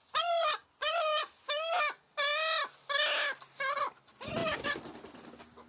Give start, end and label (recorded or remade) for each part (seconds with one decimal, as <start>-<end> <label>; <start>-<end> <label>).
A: 0.0-5.7 recorded